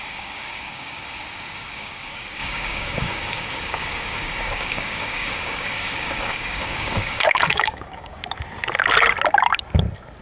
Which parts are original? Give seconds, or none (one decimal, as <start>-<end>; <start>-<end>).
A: 8.2-10.2